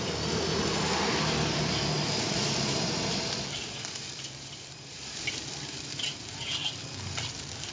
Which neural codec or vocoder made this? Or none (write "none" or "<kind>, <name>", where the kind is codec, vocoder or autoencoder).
vocoder, BigVGAN v2